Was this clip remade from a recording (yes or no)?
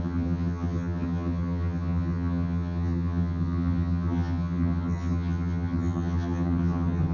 yes